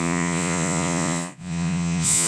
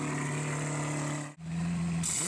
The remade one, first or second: first